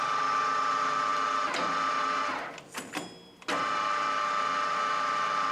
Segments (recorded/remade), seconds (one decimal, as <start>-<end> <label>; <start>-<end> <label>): 0.0-5.5 recorded

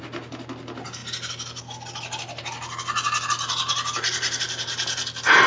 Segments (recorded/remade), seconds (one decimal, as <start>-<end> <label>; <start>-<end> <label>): 0.0-5.5 recorded

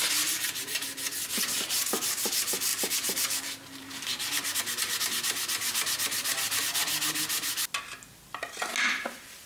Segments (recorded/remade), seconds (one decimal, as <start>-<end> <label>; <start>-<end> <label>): 0.0-9.5 recorded

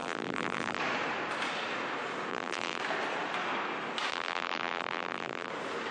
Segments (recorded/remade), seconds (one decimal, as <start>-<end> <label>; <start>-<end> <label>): 0.0-0.8 remade; 0.8-2.3 recorded; 2.3-2.8 remade; 2.8-4.1 recorded; 4.1-5.5 remade; 5.5-5.9 recorded

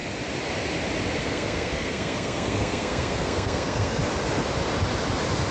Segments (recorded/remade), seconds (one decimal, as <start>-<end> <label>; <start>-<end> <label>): 0.0-1.2 recorded; 1.2-4.0 remade; 4.0-5.5 recorded

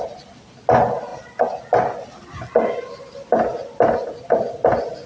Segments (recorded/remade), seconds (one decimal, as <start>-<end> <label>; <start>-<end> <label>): 0.0-5.1 recorded